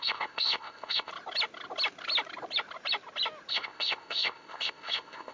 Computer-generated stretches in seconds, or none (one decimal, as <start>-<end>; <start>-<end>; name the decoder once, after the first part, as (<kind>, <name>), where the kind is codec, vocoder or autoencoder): 0.0-1.1 (codec, ZipCodec); 3.5-5.3